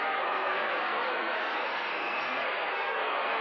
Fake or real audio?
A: fake